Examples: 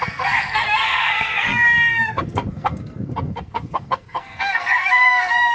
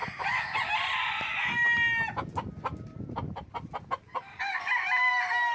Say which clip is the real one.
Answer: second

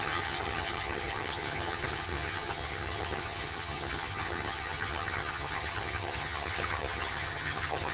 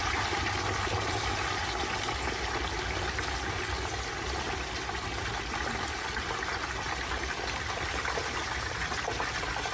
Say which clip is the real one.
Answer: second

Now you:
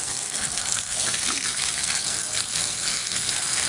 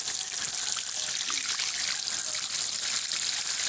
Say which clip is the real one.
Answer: second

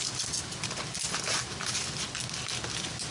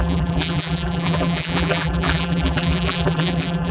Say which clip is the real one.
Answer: first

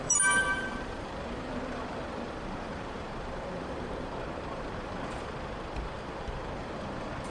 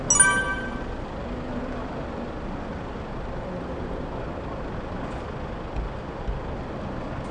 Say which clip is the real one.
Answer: second